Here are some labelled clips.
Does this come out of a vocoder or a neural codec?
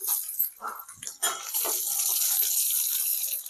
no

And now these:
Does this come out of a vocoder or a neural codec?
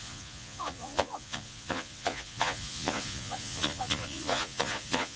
yes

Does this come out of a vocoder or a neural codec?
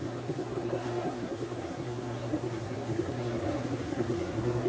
yes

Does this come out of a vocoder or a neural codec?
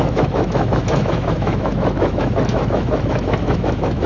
yes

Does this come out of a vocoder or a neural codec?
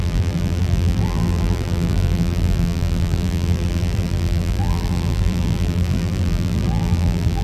yes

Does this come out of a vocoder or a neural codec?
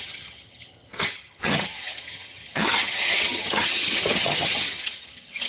yes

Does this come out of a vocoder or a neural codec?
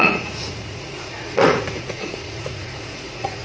yes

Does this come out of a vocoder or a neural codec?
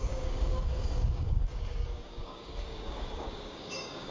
yes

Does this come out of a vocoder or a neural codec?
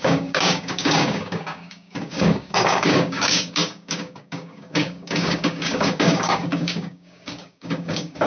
yes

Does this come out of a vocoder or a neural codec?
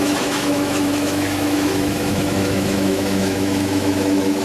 yes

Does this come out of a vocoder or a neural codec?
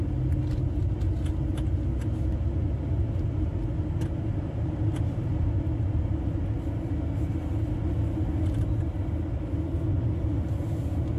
no